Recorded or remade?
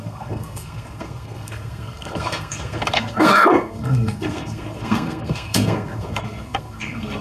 remade